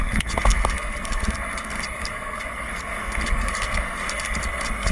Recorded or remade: remade